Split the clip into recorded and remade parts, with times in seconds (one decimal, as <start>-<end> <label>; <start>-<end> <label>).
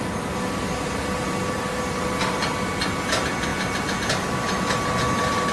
0.0-5.5 recorded